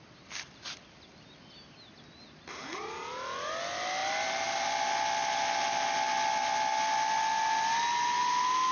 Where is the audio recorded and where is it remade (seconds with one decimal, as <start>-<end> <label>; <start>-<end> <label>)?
0.0-8.7 recorded

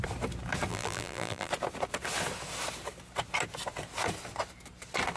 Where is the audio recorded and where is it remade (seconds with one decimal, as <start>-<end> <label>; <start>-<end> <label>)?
0.0-0.7 recorded; 0.7-1.5 remade; 1.5-5.2 recorded

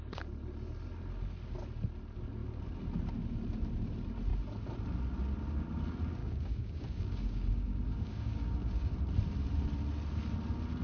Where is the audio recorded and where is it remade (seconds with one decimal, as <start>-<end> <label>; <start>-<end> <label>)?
0.0-6.2 recorded; 6.2-8.9 remade; 8.9-10.8 recorded

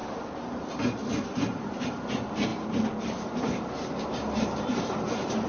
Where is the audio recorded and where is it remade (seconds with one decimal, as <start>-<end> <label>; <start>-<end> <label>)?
0.0-1.1 recorded; 1.1-5.5 remade

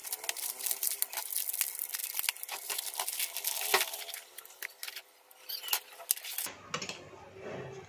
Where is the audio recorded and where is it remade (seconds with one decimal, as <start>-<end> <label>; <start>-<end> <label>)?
0.0-5.4 recorded; 5.4-6.1 remade; 6.1-7.9 recorded

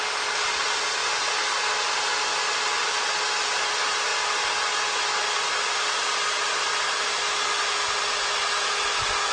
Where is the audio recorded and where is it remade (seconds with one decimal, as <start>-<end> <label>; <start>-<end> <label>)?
0.0-9.3 recorded

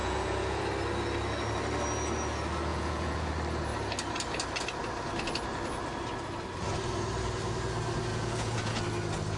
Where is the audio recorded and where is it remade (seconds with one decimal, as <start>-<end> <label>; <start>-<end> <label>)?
0.0-0.6 remade; 0.6-2.7 recorded; 2.7-3.3 remade; 3.3-8.1 recorded; 8.1-8.8 remade; 8.8-9.4 recorded

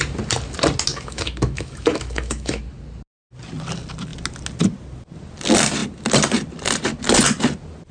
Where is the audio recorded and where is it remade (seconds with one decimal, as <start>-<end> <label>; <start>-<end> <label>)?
0.0-0.9 recorded; 0.9-2.6 remade; 2.6-7.9 recorded